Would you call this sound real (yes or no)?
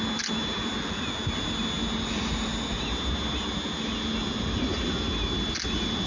yes